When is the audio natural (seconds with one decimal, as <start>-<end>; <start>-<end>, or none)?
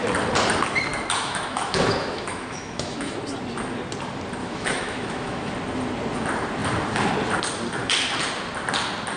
0.0-0.9; 3.2-4.4; 5.5-9.2